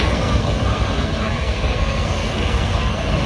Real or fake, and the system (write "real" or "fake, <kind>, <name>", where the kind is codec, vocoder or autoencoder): fake, codec, SNAC